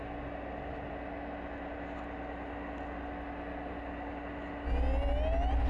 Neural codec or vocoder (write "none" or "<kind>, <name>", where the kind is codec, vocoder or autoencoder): none